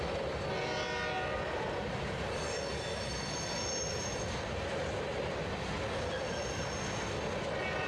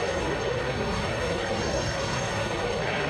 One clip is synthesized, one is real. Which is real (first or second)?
first